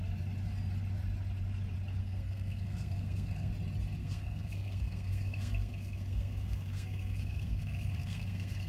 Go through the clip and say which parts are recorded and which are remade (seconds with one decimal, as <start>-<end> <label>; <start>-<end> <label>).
0.0-2.0 recorded; 2.0-3.5 remade; 3.5-4.0 recorded; 4.0-8.7 remade